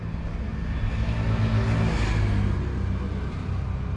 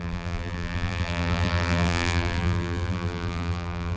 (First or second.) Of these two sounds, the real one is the first